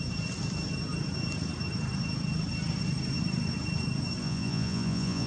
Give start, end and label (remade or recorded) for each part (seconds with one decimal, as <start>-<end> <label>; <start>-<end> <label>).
0.0-4.2 recorded; 4.2-5.3 remade